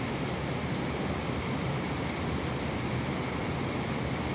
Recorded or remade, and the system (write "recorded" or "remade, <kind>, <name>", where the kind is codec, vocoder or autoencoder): recorded